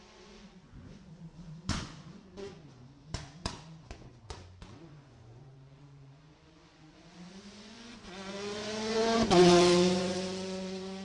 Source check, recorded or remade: remade